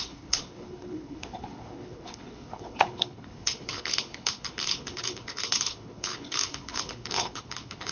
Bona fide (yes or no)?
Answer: no